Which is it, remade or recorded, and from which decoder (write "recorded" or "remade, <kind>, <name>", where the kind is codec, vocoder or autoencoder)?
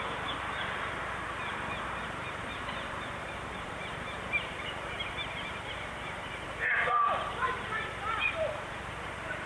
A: remade, vocoder, BigVGAN v2